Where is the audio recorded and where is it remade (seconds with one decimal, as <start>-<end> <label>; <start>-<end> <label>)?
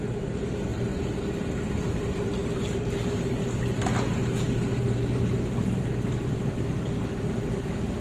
0.0-0.7 remade; 0.7-1.7 recorded; 1.7-8.0 remade